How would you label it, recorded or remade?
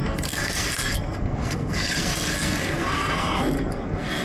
remade